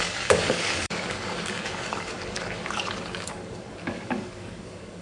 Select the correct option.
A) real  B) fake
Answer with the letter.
B